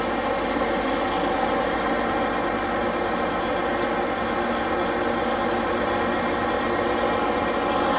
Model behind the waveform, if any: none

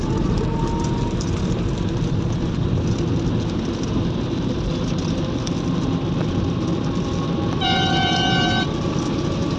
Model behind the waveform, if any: none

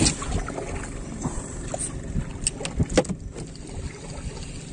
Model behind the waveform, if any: none